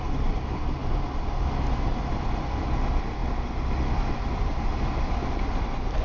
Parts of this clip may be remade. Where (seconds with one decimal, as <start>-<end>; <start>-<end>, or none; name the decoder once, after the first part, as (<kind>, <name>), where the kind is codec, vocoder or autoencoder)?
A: none